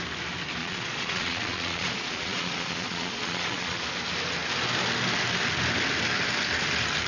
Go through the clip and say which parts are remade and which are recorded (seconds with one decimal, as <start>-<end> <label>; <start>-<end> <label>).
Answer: 0.0-0.6 recorded; 0.6-3.8 remade; 3.8-7.1 recorded